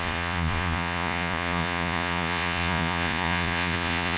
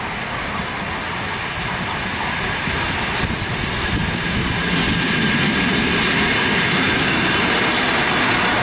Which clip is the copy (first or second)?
first